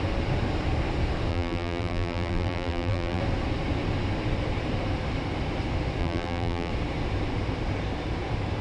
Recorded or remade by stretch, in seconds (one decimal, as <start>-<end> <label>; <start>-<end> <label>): 0.0-1.3 recorded; 1.3-3.2 remade; 3.2-6.0 recorded; 6.0-6.7 remade; 6.7-8.6 recorded